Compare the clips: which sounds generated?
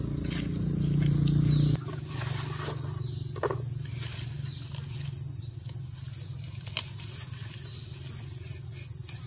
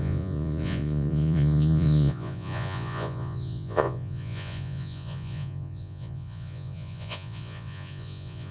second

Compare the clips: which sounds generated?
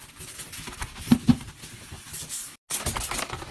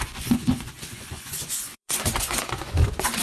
second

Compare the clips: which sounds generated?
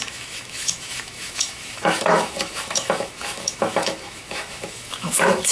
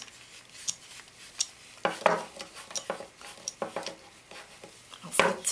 first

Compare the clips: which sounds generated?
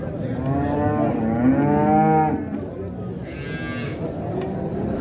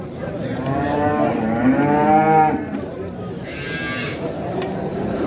second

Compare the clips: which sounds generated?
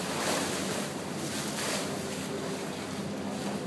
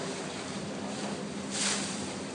second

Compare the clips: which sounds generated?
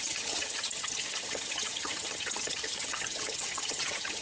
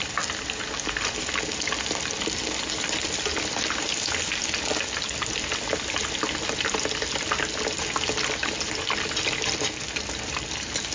first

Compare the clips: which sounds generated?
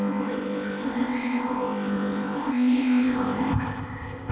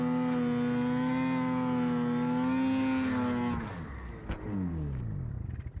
first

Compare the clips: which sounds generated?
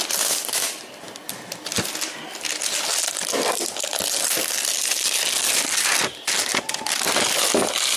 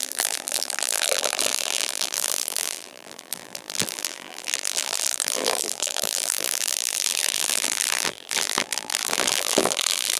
second